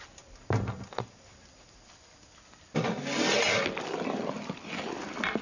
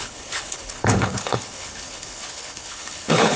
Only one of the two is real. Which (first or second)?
first